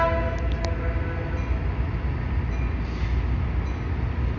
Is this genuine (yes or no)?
yes